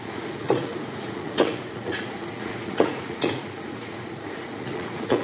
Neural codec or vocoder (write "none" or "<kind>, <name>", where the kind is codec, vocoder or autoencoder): vocoder, Vocos